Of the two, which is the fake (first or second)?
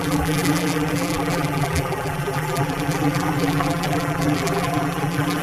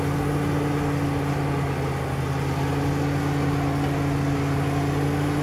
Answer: first